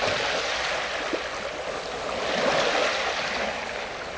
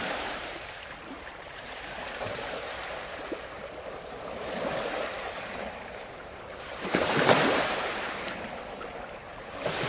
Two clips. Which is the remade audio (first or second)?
second